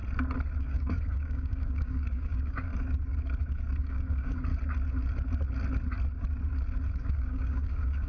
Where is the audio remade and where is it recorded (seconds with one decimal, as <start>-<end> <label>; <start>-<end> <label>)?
0.0-0.6 recorded; 0.6-2.7 remade; 2.7-3.8 recorded; 3.8-4.5 remade; 4.5-6.9 recorded; 6.9-8.1 remade